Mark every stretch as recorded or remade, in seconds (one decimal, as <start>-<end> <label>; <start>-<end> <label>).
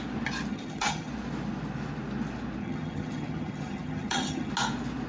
0.0-0.5 recorded; 0.5-1.1 remade; 1.1-2.6 recorded; 2.6-4.5 remade; 4.5-5.1 recorded